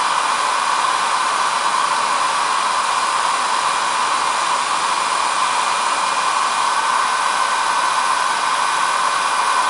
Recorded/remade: recorded